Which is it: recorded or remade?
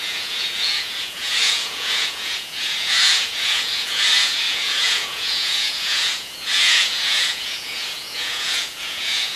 remade